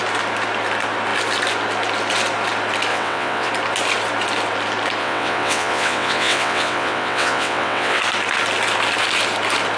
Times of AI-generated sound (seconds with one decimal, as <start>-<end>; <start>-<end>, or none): 2.9-3.5; 5.0-8.0